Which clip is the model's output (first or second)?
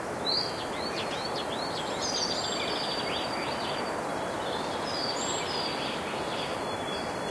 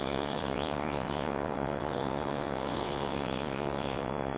second